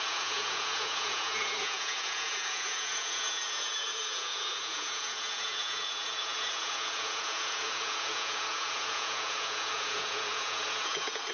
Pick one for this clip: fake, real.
fake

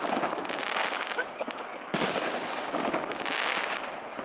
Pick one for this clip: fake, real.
real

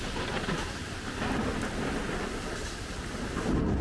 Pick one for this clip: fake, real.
real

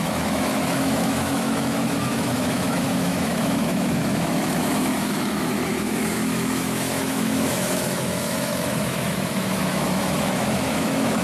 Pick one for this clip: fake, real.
fake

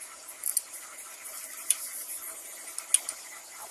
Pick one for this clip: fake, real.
real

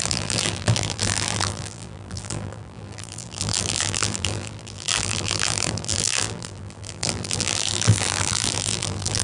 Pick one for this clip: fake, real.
fake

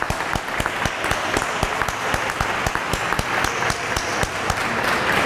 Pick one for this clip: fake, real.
real